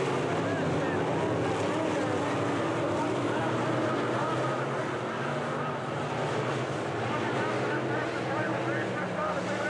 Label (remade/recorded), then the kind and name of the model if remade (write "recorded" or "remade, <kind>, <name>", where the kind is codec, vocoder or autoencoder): recorded